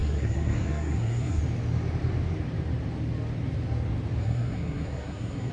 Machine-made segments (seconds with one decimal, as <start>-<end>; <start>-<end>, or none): 0.0-1.4; 4.2-5.5